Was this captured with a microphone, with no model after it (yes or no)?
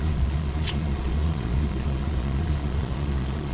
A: no